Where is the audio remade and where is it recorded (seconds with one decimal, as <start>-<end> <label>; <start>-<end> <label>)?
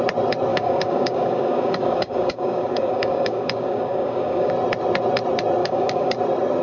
0.0-0.5 recorded; 0.5-4.5 remade; 4.5-5.6 recorded; 5.6-6.1 remade; 6.1-6.6 recorded